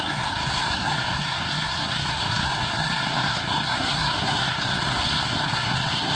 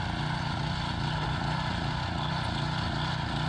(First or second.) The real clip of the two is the second